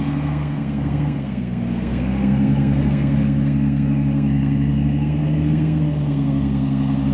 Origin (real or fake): fake